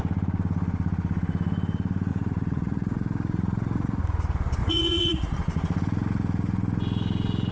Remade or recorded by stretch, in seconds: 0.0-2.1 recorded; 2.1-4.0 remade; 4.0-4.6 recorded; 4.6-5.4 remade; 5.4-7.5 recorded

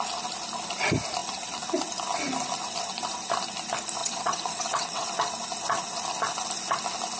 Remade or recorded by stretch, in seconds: 0.0-4.0 recorded; 4.0-5.1 remade; 5.1-7.2 recorded

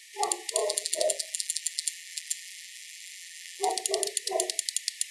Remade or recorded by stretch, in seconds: 0.0-0.6 recorded; 0.6-3.7 remade; 3.7-5.1 recorded